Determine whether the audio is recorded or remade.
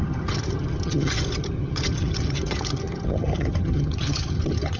remade